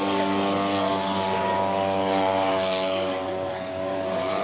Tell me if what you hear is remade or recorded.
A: remade